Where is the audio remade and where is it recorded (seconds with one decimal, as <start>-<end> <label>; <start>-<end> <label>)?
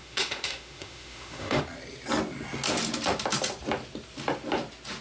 0.0-1.6 remade; 1.6-5.0 recorded